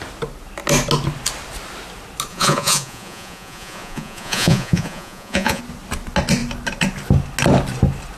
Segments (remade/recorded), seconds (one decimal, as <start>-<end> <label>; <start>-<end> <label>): 0.0-2.3 recorded; 2.3-5.6 remade; 5.6-8.2 recorded